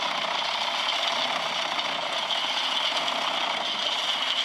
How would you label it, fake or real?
real